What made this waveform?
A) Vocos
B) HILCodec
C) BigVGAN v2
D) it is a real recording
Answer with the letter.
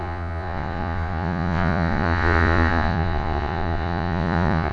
A